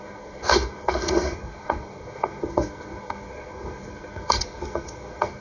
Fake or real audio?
fake